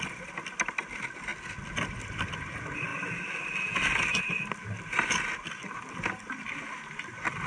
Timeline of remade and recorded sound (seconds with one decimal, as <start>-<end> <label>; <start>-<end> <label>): 0.0-7.5 recorded